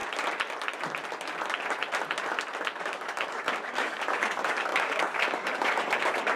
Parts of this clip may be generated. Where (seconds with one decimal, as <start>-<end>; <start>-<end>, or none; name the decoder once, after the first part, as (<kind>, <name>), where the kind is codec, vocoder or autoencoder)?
2.8-6.4 (codec, DAC)